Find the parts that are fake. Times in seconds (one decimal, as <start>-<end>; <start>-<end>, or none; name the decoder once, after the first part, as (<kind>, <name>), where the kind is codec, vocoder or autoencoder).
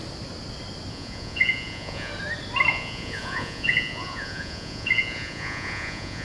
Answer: 0.9-2.1 (vocoder, Vocos); 2.7-6.2